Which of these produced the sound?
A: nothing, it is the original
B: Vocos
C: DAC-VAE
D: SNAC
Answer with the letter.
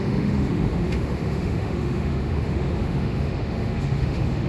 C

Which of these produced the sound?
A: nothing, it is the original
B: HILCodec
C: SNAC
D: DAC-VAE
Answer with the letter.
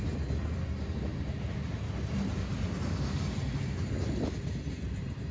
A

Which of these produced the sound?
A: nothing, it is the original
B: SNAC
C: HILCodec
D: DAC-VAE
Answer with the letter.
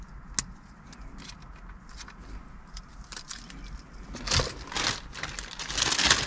A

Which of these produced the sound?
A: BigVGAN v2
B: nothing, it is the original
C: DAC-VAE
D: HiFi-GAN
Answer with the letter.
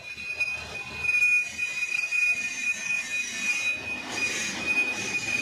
B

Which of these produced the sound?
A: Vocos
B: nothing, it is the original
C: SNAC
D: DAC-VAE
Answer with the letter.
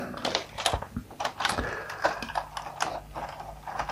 B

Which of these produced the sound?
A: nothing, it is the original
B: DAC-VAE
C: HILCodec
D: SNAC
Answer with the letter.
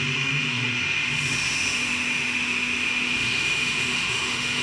B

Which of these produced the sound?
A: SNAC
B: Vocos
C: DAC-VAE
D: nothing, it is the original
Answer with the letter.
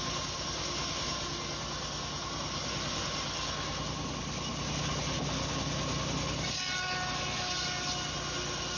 D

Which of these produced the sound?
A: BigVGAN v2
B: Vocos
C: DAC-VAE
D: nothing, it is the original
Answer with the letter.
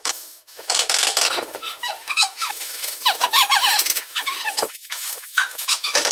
C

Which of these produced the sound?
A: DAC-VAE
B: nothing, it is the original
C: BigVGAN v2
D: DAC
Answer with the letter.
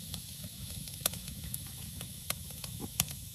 A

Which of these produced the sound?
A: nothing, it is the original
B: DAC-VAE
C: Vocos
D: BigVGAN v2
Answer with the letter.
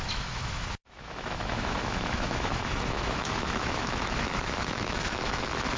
B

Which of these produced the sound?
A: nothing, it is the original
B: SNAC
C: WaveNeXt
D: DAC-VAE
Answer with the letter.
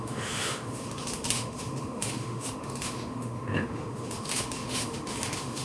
D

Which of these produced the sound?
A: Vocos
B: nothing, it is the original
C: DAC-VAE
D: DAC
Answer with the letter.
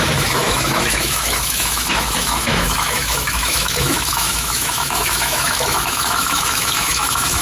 C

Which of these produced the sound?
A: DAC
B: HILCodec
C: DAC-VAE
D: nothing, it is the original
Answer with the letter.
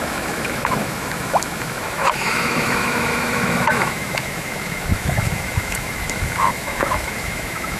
C